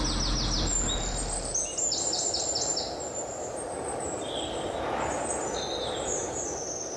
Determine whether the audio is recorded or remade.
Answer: recorded